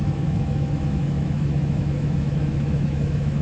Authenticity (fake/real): fake